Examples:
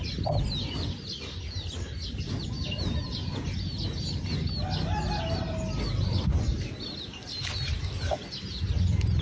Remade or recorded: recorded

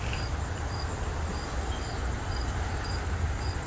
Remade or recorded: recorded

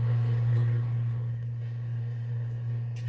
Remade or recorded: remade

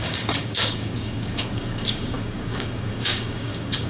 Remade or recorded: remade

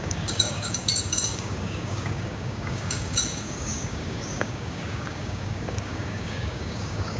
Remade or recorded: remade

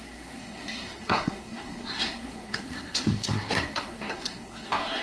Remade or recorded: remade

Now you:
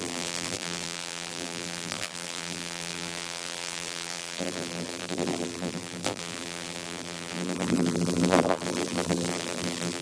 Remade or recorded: remade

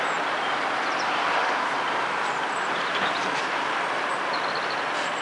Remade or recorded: recorded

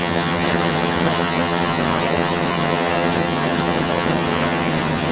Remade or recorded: remade